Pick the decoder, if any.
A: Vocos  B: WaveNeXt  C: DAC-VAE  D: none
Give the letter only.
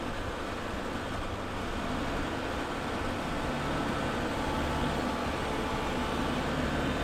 D